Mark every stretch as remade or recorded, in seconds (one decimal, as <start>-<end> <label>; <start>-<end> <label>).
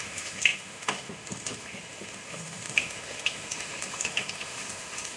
0.0-5.2 remade